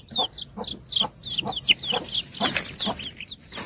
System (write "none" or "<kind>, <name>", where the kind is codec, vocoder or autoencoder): none